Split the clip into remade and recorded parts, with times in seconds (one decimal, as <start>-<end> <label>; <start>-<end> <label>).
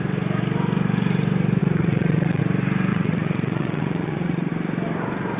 0.0-1.6 recorded; 1.6-2.4 remade; 2.4-2.9 recorded; 2.9-4.5 remade; 4.5-5.4 recorded